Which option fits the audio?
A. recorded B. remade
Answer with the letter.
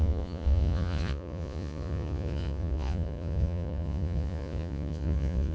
B